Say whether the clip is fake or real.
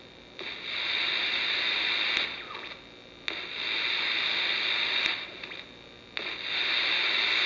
real